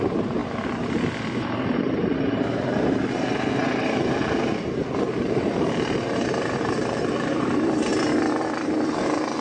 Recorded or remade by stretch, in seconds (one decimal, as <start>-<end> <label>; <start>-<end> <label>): 0.0-7.9 remade; 7.9-8.5 recorded; 8.5-9.4 remade

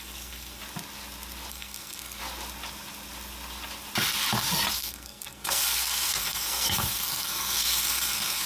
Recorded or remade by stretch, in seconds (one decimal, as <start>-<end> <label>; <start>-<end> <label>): 0.0-0.6 remade; 0.6-1.5 recorded; 1.5-2.2 remade; 2.2-4.7 recorded; 4.7-8.5 remade

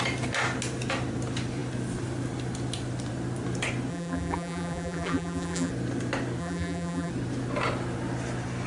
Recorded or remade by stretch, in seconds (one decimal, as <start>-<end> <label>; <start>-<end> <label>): 0.0-3.9 recorded; 3.9-5.7 remade; 5.7-6.4 recorded; 6.4-7.1 remade; 7.1-8.7 recorded

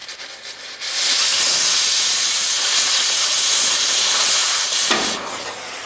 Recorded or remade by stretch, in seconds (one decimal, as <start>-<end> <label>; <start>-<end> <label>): 0.0-1.3 recorded; 1.3-4.8 remade; 4.8-5.9 recorded

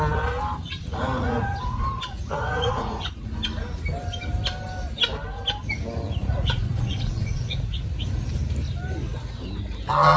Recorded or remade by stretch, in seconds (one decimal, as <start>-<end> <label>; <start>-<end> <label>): 0.0-0.8 recorded; 0.8-3.3 remade; 3.3-6.2 recorded; 6.2-7.9 remade; 7.9-10.2 recorded

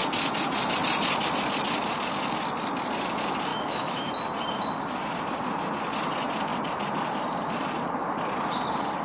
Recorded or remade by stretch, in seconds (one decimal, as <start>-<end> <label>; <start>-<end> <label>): 0.0-3.5 recorded; 3.5-4.1 remade; 4.1-9.0 recorded

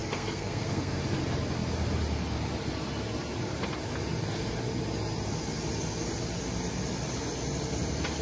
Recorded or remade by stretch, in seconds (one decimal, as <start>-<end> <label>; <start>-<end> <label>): 0.0-1.0 remade; 1.0-8.2 recorded